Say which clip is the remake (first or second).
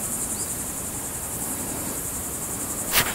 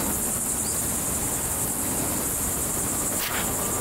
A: first